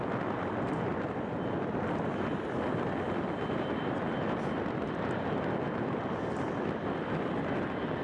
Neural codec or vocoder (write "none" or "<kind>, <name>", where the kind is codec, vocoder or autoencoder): none